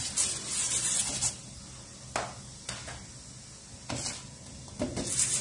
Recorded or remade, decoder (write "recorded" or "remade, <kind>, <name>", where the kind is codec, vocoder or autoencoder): recorded